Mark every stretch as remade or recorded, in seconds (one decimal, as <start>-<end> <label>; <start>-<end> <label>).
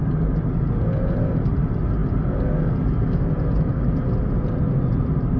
0.0-5.4 recorded